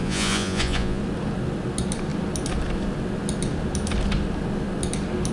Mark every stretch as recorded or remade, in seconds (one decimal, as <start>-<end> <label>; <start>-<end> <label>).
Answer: 0.0-1.0 remade; 1.0-5.3 recorded